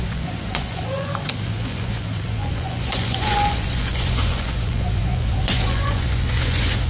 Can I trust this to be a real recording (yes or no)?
no